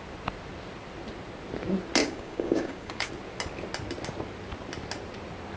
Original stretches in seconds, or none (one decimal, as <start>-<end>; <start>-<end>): 0.0-2.0; 3.1-5.6